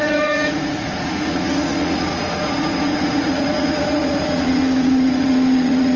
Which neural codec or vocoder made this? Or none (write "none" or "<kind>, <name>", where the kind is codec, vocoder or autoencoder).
vocoder, Vocos